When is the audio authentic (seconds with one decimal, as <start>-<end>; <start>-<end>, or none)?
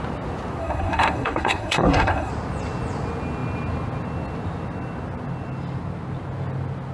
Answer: 0.0-0.6; 2.3-6.9